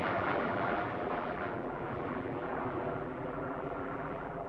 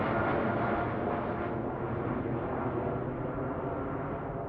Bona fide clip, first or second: second